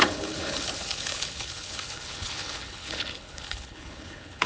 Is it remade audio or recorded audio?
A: remade